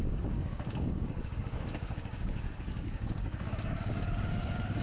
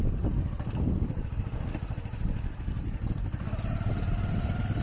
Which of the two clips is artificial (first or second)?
first